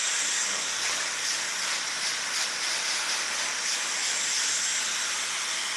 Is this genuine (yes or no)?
yes